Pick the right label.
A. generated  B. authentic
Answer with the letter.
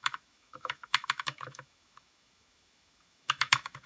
A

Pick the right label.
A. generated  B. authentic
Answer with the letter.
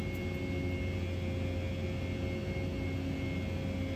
B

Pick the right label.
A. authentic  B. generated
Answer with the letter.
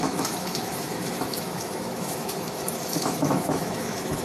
B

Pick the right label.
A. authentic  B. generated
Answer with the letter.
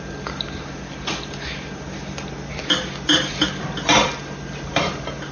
A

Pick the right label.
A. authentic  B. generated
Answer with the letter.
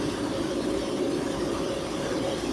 A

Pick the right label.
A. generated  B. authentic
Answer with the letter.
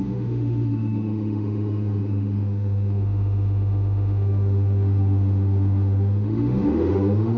A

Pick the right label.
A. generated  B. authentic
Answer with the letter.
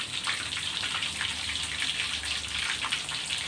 B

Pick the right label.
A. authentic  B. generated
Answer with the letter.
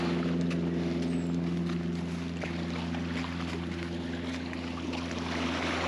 A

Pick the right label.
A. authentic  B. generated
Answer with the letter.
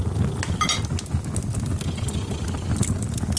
A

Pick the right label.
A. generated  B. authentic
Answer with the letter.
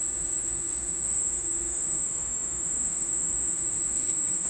A